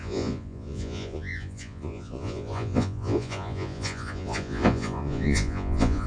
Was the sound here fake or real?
fake